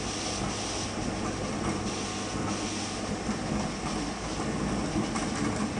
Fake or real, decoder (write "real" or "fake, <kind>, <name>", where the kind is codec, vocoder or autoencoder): real